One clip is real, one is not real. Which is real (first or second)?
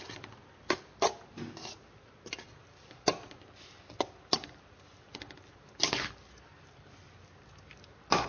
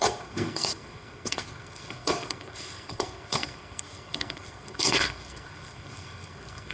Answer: first